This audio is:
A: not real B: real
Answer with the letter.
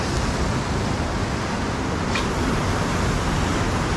B